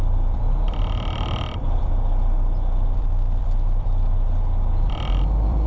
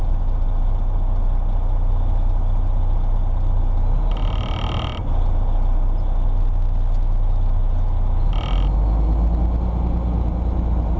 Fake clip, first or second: first